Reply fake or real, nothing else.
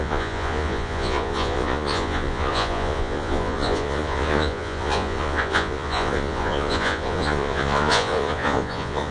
fake